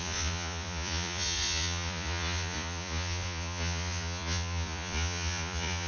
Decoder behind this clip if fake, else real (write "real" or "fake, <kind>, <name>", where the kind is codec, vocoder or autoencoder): fake, vocoder, Vocos